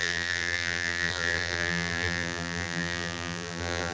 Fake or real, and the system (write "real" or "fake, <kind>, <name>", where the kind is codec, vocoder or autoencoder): fake, vocoder, BigVGAN v2